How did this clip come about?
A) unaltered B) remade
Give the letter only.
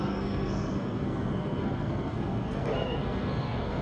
B